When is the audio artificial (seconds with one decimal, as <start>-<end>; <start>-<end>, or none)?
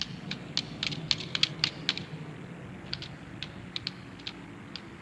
none